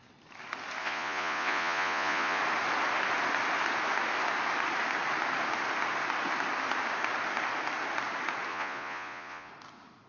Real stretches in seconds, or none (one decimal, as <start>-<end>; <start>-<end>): 0.0-0.8; 2.4-8.5; 9.5-10.1